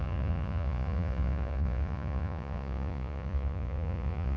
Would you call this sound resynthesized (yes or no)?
yes